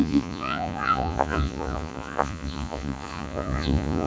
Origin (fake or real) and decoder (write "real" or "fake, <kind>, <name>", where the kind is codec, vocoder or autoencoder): fake, vocoder, Vocos